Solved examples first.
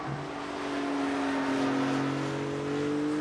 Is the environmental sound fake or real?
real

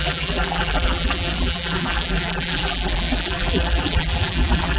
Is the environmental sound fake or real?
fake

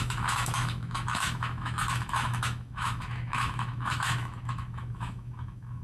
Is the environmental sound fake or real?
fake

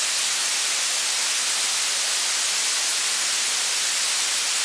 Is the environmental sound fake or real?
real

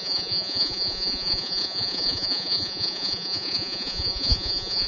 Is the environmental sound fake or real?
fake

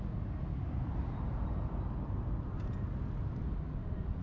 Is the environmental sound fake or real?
real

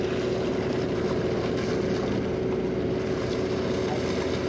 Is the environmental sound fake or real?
real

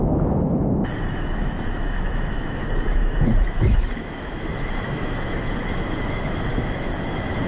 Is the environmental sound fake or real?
fake